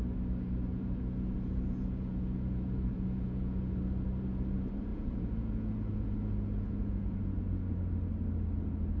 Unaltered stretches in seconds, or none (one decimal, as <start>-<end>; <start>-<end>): 0.0-0.7; 3.8-4.9; 7.2-9.0